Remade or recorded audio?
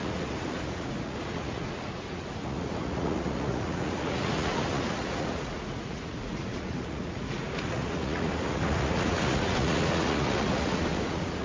remade